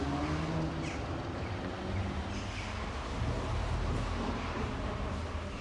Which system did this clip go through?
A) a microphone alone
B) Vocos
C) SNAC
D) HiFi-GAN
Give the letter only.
A